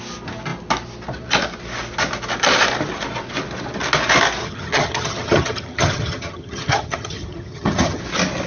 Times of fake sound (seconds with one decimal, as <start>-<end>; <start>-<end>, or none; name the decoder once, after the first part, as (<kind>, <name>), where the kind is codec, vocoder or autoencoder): 4.4-8.0 (vocoder, HiFi-GAN)